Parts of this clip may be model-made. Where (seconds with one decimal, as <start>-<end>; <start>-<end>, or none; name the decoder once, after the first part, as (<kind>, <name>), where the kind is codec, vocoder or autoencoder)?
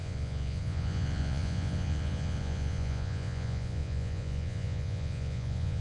0.0-5.8 (vocoder, Vocos)